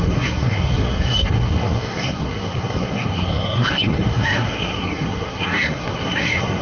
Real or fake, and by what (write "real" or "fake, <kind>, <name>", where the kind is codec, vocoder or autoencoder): fake, codec, SNAC